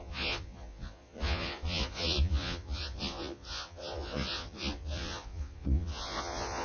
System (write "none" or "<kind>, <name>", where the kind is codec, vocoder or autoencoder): vocoder, Vocos